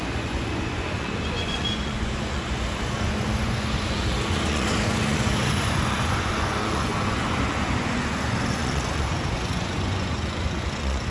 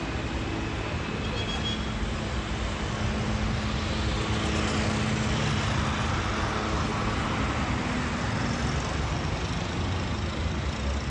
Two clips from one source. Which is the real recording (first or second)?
second